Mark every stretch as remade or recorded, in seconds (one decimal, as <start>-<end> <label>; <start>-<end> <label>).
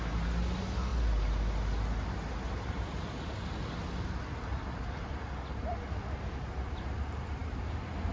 0.0-8.1 recorded